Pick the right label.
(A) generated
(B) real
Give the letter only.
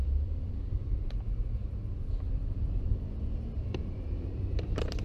A